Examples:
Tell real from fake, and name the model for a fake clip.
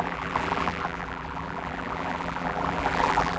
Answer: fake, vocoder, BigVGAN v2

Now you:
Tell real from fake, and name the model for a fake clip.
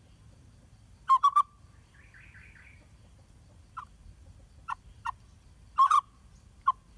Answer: fake, vocoder, BigVGAN v2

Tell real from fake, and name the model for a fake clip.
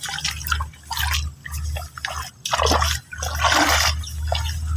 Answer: real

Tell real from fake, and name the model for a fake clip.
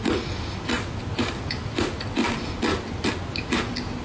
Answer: fake, vocoder, BigVGAN v2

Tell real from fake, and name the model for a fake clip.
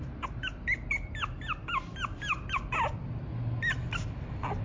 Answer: real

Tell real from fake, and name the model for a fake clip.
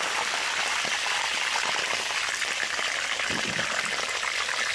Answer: real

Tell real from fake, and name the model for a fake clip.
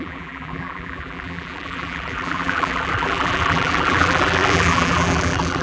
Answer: fake, vocoder, BigVGAN v2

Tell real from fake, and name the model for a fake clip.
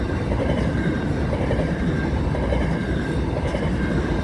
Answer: real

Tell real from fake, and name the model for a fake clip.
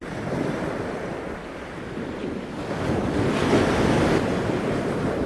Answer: real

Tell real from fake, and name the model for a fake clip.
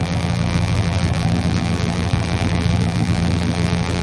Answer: fake, vocoder, BigVGAN v2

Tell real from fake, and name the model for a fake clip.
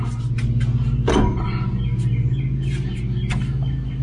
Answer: real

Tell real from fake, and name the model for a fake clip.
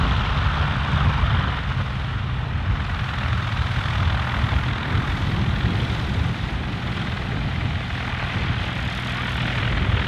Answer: real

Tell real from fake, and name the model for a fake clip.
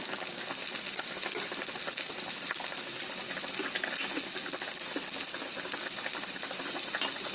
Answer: real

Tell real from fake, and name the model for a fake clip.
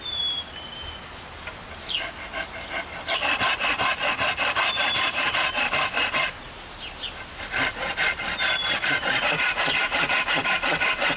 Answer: fake, vocoder, BigVGAN v2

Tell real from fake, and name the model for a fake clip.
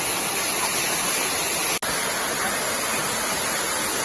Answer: real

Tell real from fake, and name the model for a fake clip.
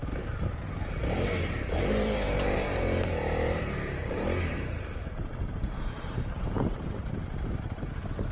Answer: fake, vocoder, BigVGAN v2